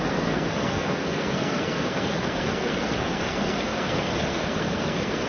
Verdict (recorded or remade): remade